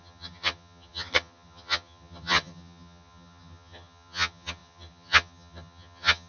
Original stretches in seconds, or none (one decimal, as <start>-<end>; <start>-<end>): none